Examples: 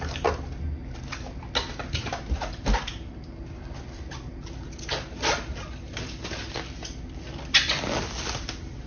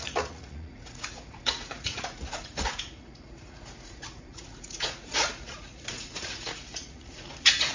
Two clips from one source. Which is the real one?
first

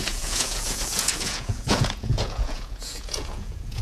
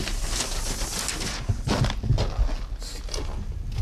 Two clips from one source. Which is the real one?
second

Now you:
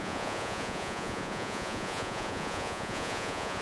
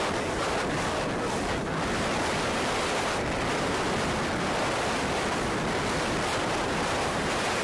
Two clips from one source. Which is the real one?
second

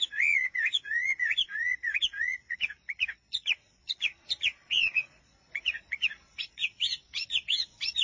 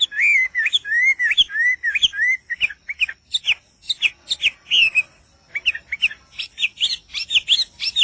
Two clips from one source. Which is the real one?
second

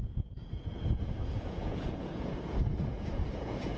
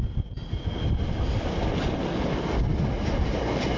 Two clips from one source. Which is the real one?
second